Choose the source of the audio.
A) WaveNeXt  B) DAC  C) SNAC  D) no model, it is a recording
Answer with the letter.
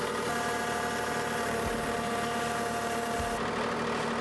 D